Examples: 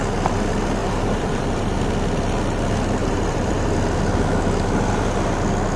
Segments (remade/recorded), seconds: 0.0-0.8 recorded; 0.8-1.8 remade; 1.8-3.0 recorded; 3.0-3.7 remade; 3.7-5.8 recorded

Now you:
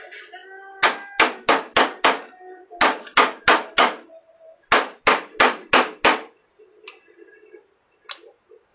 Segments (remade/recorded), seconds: 0.0-8.7 recorded

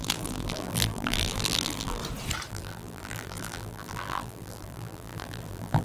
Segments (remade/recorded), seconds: 0.0-2.0 remade; 2.0-2.5 recorded; 2.5-5.8 remade

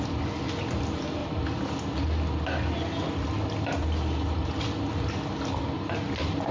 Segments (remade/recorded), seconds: 0.0-6.5 recorded

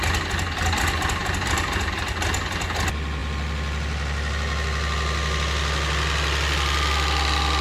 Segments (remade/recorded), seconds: 0.0-1.2 recorded; 1.2-2.2 remade; 2.2-7.6 recorded

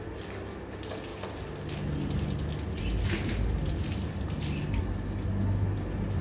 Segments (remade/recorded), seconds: 0.0-1.1 recorded; 1.1-4.8 remade; 4.8-6.2 recorded